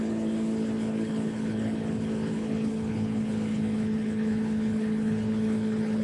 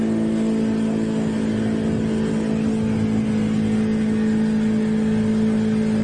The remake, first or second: first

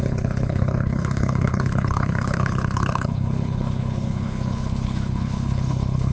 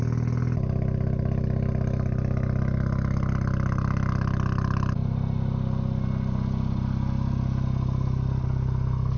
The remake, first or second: first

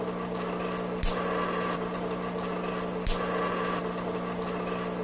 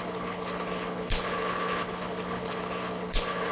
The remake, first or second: second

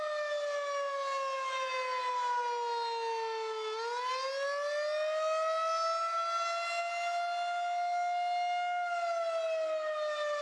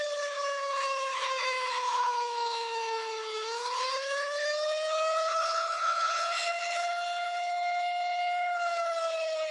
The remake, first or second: second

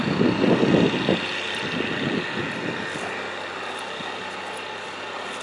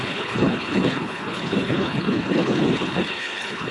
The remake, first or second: second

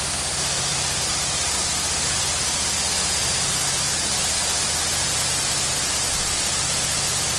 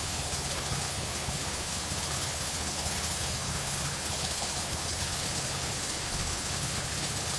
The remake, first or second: second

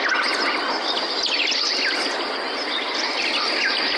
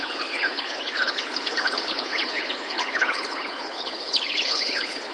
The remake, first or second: second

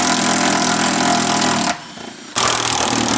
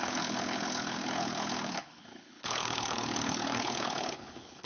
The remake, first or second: second